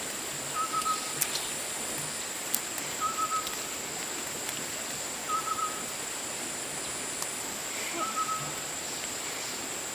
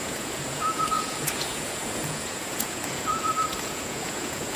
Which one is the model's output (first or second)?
second